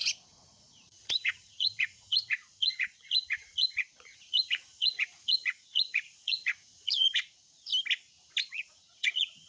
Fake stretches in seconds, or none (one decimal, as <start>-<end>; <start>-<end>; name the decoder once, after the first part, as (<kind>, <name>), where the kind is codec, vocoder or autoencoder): 0.0-7.7 (vocoder, Vocos); 8.5-9.5